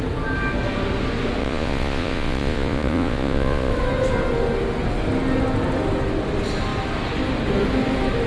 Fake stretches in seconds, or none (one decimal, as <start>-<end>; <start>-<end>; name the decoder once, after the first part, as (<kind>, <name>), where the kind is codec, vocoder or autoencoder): 1.4-3.7 (vocoder, Vocos)